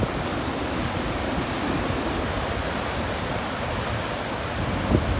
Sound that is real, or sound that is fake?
real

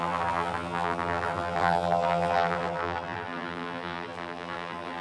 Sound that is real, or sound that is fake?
fake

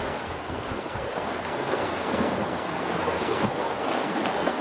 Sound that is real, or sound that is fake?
fake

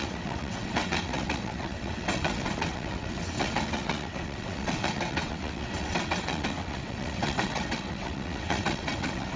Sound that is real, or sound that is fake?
fake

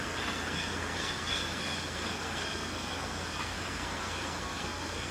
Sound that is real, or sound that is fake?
fake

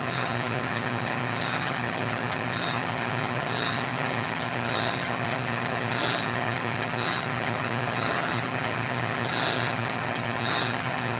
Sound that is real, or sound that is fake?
fake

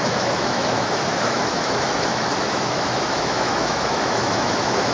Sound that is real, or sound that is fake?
fake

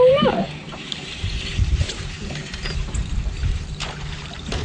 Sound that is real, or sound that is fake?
fake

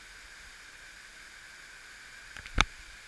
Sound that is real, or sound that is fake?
real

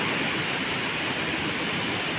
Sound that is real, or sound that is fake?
real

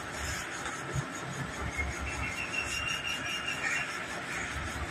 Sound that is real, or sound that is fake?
real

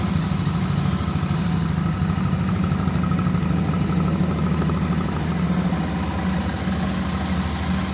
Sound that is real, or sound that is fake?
real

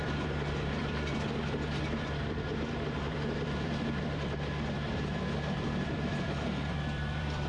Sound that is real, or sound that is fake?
fake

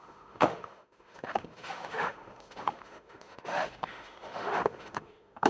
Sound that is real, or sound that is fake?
fake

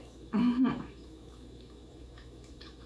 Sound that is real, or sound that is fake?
fake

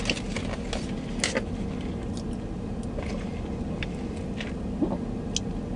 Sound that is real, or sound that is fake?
real